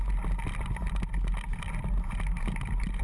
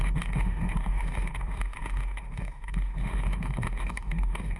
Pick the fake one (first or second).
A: second